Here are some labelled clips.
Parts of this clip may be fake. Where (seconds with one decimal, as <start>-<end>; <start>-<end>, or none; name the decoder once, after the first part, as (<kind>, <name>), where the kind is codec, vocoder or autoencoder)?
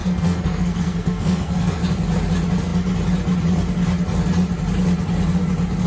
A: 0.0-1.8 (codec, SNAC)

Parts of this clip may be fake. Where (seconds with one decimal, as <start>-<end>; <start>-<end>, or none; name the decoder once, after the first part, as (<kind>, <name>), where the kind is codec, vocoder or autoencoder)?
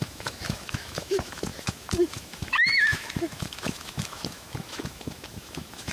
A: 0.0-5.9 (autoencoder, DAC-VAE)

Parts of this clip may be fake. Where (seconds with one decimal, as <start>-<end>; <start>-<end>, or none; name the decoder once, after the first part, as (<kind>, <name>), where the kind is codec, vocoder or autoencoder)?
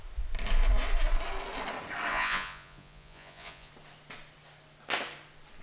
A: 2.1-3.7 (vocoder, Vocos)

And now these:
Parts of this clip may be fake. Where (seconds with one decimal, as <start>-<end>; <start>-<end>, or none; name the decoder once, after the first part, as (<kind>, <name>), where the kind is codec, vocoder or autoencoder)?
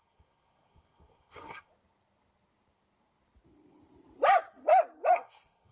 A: 0.0-1.7 (codec, SNAC); 5.1-5.7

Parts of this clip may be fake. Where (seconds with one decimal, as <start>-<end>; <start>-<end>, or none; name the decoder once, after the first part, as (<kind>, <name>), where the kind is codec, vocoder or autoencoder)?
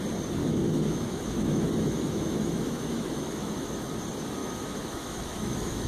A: 0.4-3.9 (autoencoder, DAC-VAE); 4.4-5.9